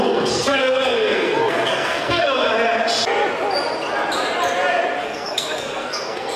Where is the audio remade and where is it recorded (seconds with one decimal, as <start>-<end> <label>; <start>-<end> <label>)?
0.0-2.5 remade; 2.5-5.0 recorded; 5.0-6.4 remade